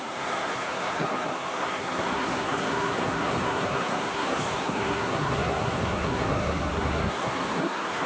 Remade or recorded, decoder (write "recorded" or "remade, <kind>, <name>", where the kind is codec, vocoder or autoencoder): remade, codec, SNAC